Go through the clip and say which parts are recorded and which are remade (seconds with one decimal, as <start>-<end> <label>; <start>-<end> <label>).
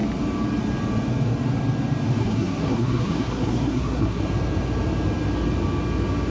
0.0-2.2 recorded; 2.2-4.2 remade; 4.2-6.3 recorded